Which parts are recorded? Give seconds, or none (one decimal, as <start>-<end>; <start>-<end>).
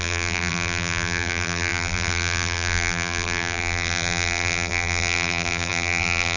none